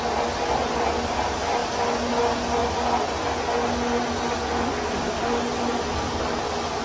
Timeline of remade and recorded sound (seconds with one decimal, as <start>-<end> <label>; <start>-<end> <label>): 0.0-6.8 recorded